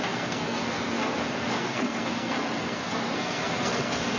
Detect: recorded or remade remade